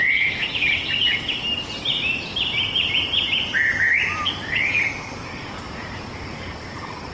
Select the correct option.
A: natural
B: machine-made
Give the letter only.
B